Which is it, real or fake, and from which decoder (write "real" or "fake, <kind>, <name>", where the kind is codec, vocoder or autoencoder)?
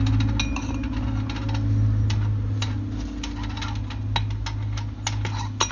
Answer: real